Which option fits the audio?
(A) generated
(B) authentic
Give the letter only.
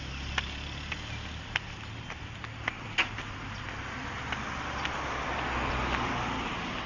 B